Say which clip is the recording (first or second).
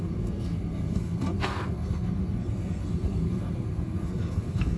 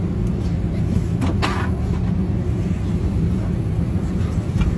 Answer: second